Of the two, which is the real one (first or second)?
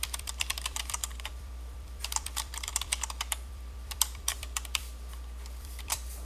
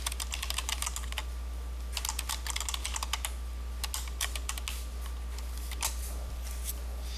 second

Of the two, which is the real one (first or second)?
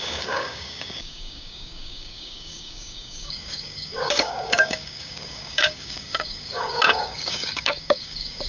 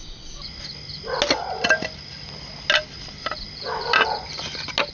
second